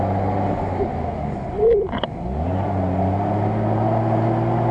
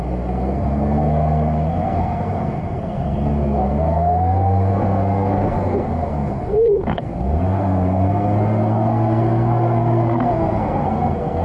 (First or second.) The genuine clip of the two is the first